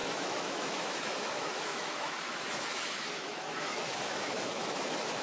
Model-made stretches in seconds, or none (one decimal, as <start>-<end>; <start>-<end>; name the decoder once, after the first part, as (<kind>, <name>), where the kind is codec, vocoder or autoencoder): 0.0-5.2 (autoencoder, DAC-VAE)